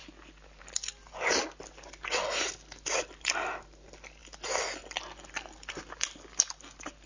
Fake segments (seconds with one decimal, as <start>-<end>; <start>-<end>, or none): none